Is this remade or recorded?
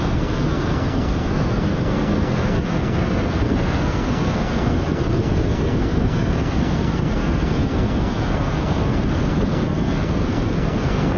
remade